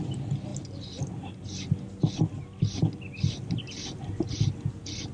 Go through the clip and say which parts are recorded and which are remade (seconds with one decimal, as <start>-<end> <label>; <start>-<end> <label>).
0.0-5.1 recorded